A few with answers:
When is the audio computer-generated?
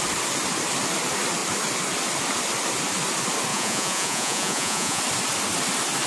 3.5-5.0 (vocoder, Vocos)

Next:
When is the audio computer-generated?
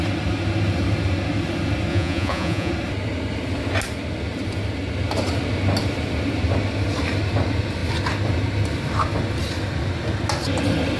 1.9-2.7 (vocoder, Vocos)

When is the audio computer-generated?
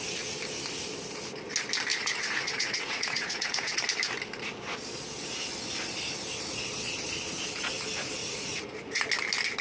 1.9-3.8 (vocoder, Vocos); 8.2-9.1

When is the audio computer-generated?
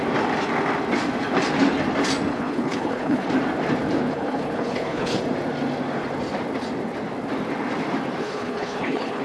2.3-3.3 (codec, HILCodec); 4.1-5.2; 8.2-9.2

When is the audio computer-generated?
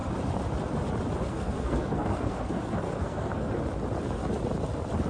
1.3-3.5 (codec, SNAC)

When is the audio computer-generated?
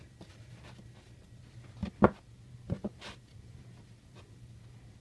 none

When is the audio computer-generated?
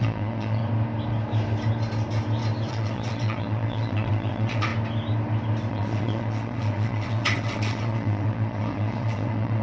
0.0-0.6 (vocoder, WaveNeXt); 2.7-4.7; 5.7-9.6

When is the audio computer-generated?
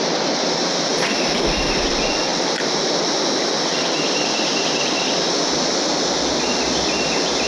0.9-1.9 (vocoder, BigVGAN v2); 2.3-5.1